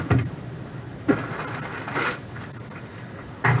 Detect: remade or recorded recorded